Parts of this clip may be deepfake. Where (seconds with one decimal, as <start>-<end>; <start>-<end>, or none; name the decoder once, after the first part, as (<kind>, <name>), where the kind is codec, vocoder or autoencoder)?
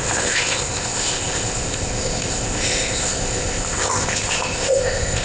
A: 0.0-5.2 (codec, ZipCodec)